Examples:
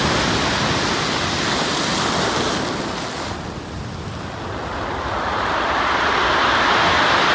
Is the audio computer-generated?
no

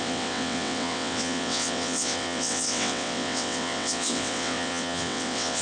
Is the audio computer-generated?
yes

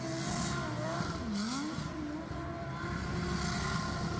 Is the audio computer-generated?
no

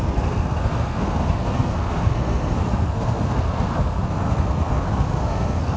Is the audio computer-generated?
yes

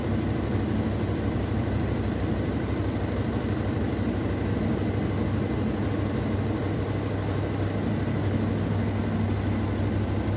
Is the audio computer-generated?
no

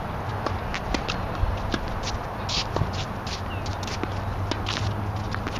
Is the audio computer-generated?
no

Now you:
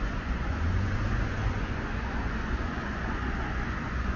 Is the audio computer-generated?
yes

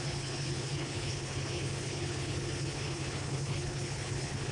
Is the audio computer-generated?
yes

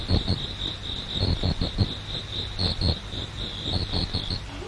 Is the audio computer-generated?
no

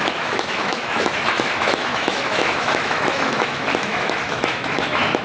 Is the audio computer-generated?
yes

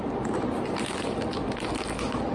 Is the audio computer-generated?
no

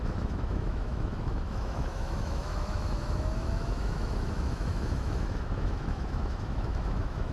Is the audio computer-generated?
yes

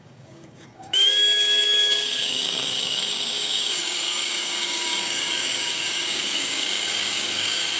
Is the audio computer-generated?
yes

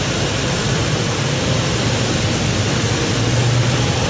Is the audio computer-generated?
yes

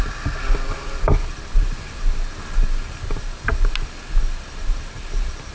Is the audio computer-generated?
no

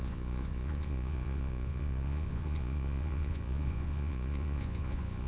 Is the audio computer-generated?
yes